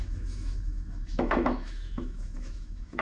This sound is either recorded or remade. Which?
remade